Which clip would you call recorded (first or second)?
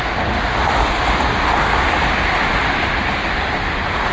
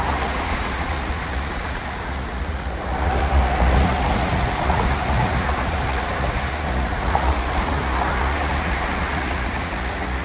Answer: first